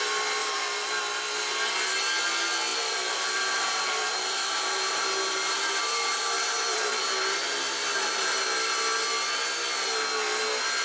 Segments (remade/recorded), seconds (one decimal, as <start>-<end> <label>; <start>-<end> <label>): 0.0-0.4 recorded; 0.4-1.0 remade; 1.0-2.7 recorded; 2.7-7.0 remade; 7.0-10.8 recorded